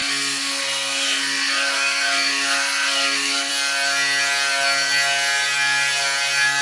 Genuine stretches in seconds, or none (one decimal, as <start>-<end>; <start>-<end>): 3.5-6.6